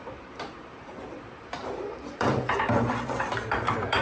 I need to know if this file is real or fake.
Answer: fake